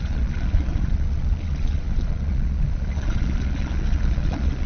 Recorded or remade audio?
remade